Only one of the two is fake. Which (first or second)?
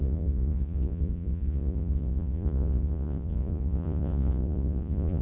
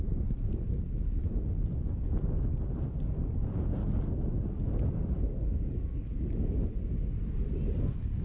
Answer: first